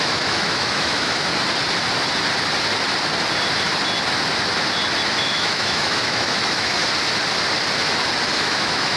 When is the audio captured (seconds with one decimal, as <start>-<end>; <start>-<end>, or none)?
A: 1.3-5.1; 6.8-8.3